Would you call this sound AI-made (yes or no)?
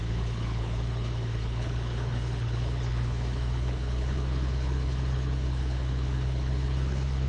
yes